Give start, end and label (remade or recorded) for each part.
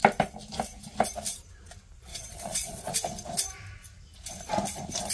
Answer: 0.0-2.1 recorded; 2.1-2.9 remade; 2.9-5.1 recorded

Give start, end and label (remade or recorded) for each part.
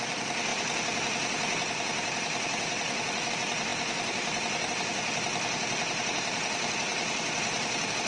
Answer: 0.0-8.1 recorded